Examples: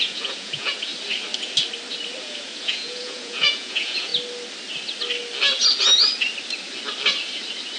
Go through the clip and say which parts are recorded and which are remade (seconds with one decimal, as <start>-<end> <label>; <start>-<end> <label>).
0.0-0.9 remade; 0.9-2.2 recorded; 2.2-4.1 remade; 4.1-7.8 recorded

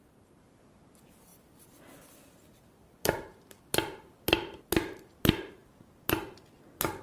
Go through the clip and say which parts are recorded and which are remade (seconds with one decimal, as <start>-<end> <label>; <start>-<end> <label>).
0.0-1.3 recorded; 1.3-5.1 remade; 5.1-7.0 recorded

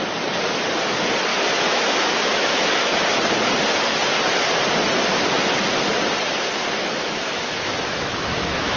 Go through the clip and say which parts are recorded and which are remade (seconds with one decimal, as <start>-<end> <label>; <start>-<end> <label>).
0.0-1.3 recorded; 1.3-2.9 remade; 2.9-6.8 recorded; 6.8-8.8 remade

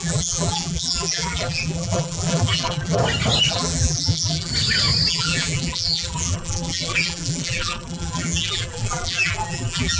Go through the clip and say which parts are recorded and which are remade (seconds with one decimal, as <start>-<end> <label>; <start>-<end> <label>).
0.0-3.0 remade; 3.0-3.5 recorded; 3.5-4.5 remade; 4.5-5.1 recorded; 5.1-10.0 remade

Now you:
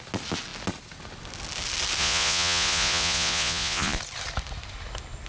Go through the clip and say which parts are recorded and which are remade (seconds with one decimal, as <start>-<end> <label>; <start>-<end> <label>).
0.0-2.0 recorded; 2.0-4.0 remade; 4.0-5.3 recorded

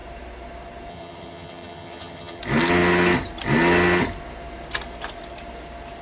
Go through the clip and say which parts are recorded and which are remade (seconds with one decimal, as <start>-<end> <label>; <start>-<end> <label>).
0.0-0.9 recorded; 0.9-2.4 remade; 2.4-6.0 recorded

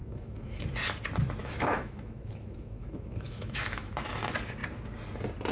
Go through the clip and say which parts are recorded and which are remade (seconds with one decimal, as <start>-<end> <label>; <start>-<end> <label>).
0.0-0.6 remade; 0.6-1.4 recorded; 1.4-4.1 remade; 4.1-5.5 recorded

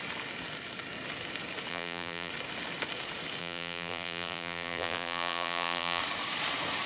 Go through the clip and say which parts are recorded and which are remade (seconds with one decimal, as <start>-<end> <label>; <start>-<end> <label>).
0.0-1.7 recorded; 1.7-2.3 remade; 2.3-3.4 recorded; 3.4-6.0 remade; 6.0-6.9 recorded